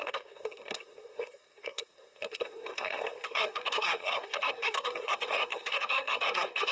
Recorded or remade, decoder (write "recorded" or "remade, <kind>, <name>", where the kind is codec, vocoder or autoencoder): remade, codec, SNAC